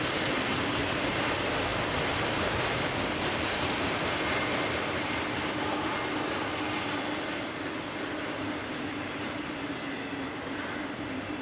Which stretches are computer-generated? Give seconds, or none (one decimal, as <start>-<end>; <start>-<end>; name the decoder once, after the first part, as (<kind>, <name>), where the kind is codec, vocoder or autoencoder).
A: 8.6-9.5 (vocoder, BigVGAN v2)